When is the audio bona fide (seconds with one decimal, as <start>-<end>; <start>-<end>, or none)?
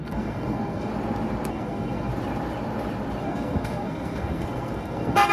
0.9-1.5; 2.1-3.2